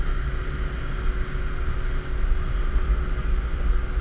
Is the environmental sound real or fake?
real